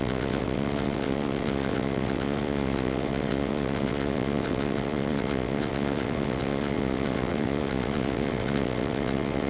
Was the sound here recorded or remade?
remade